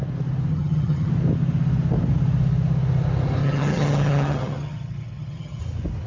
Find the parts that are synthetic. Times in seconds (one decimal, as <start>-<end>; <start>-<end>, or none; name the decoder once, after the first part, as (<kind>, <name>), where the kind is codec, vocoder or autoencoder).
0.5-1.1 (vocoder, HiFi-GAN); 3.4-5.6